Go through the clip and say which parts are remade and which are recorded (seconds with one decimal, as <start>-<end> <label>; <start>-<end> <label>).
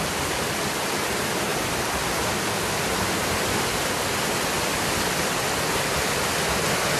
0.0-7.0 recorded